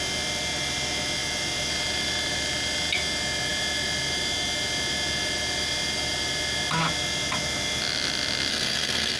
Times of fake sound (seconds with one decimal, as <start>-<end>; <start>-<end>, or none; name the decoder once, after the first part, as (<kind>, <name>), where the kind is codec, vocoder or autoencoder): 8.5-9.2 (codec, SNAC)